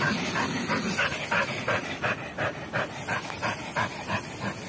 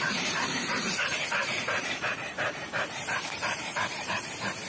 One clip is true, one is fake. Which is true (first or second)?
first